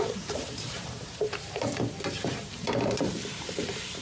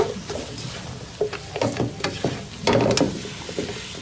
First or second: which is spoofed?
first